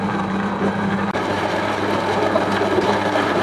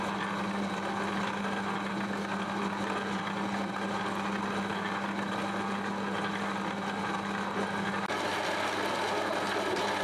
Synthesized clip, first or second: first